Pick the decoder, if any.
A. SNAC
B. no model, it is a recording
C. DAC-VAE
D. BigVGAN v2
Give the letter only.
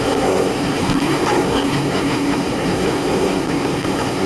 A